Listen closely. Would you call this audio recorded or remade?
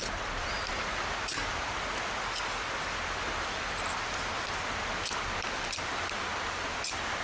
recorded